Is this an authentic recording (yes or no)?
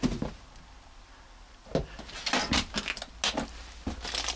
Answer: yes